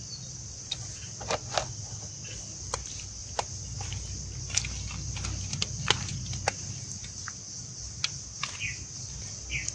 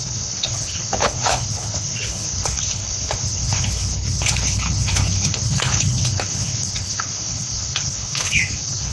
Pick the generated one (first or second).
second